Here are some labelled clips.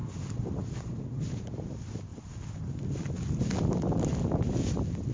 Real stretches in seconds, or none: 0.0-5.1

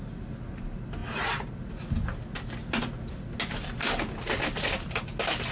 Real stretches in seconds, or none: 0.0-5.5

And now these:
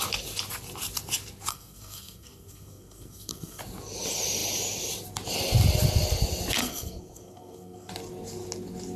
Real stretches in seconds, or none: 0.0-1.5; 3.6-6.6; 7.9-9.0